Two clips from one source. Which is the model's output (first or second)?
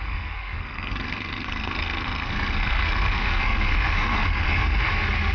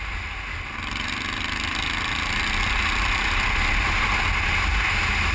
first